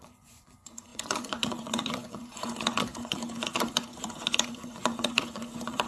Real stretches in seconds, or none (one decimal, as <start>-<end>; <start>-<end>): none